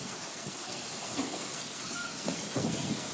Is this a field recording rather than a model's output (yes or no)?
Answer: no